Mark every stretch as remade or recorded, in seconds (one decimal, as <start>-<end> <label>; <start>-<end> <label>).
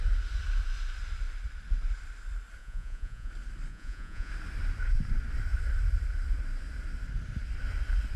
0.0-2.6 recorded; 2.6-3.3 remade; 3.3-3.7 recorded; 3.7-4.3 remade; 4.3-8.2 recorded